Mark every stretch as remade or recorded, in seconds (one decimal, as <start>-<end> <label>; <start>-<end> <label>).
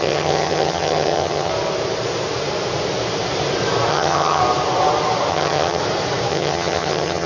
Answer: 0.0-1.5 remade; 1.5-3.9 recorded; 3.9-4.4 remade; 4.4-5.3 recorded; 5.3-5.8 remade; 5.8-6.3 recorded; 6.3-7.3 remade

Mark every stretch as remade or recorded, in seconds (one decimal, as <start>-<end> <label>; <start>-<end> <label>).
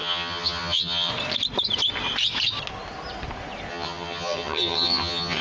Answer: 0.0-1.1 remade; 1.1-3.7 recorded; 3.7-5.4 remade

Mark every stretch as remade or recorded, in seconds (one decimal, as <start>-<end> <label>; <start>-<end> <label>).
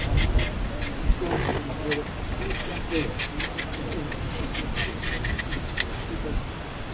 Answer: 0.0-6.9 recorded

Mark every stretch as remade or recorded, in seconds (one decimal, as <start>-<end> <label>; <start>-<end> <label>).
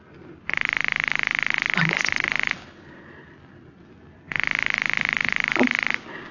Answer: 0.0-6.3 recorded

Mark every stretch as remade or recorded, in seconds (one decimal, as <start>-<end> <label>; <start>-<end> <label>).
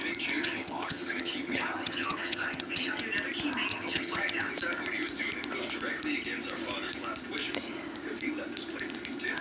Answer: 0.0-0.4 recorded; 0.4-3.0 remade; 3.0-3.7 recorded; 3.7-4.5 remade; 4.5-9.4 recorded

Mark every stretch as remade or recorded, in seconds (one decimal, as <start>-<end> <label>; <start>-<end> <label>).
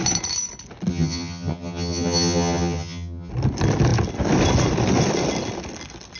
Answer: 0.0-0.9 recorded; 0.9-3.3 remade; 3.3-6.2 recorded